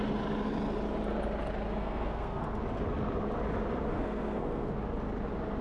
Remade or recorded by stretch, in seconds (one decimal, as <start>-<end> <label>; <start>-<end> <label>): 0.0-1.8 recorded; 1.8-2.4 remade; 2.4-3.9 recorded; 3.9-4.7 remade; 4.7-5.6 recorded